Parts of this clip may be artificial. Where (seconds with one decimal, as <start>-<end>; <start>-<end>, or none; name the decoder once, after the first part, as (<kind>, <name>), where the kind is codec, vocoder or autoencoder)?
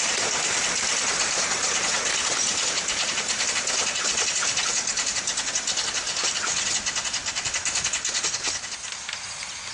none